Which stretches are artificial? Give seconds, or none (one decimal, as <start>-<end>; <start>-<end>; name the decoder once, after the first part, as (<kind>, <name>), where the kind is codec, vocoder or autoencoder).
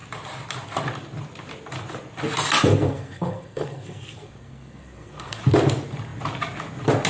2.7-5.4 (codec, SNAC)